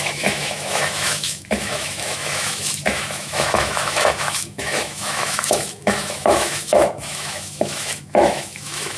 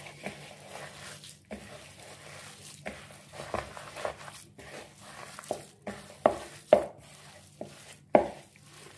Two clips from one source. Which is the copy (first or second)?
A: first